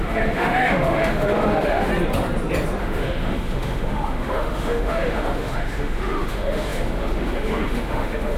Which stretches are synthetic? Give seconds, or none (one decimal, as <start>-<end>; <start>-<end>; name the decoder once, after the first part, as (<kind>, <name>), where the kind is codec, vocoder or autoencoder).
0.0-1.9 (autoencoder, DAC-VAE); 2.8-8.4